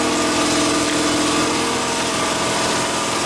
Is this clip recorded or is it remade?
recorded